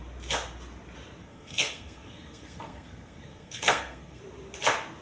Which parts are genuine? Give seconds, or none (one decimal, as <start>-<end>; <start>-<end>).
0.0-1.2; 4.2-5.0